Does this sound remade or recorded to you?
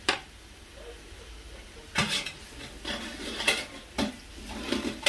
recorded